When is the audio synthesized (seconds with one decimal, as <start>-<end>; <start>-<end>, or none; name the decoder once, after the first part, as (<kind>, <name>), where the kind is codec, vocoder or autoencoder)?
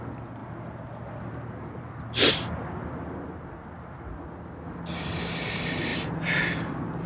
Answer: 5.9-6.4 (vocoder, BigVGAN v2)